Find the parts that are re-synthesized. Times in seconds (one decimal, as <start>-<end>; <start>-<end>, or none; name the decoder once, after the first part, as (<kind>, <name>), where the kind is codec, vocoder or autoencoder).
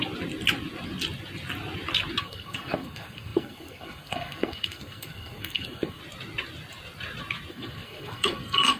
2.2-6.0 (codec, SNAC); 7.5-8.8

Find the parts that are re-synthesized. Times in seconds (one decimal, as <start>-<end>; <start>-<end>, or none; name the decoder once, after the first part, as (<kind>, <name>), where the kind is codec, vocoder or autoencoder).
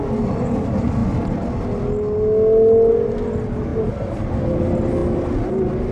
3.7-4.6 (vocoder, BigVGAN v2)